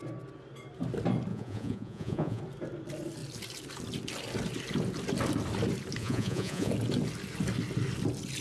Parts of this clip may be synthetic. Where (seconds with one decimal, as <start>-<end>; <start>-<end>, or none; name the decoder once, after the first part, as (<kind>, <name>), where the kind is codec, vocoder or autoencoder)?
1.3-2.4 (vocoder, Vocos); 6.0-6.7